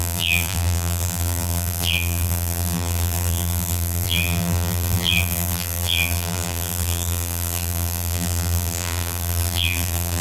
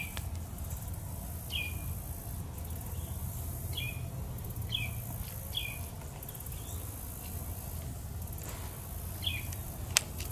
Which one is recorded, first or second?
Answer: second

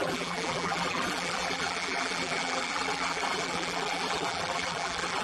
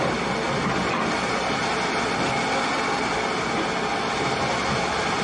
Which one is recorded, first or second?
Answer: second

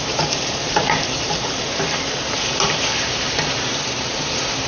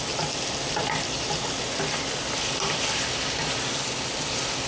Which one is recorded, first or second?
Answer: second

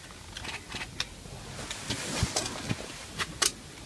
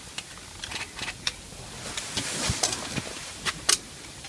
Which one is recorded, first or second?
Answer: first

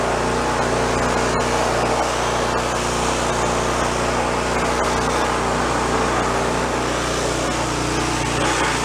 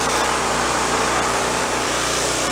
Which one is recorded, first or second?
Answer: first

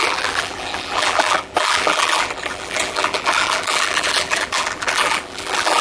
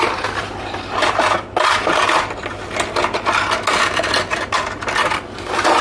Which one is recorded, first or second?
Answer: second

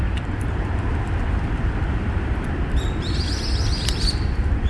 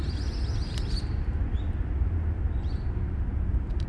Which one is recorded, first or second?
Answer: second